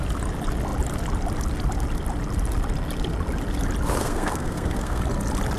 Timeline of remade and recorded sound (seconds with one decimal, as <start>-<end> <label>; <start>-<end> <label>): 0.0-4.0 recorded; 4.0-5.0 remade; 5.0-5.6 recorded